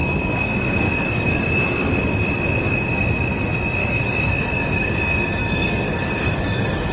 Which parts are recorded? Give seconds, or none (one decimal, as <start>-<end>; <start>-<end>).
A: 1.3-3.8; 5.0-5.4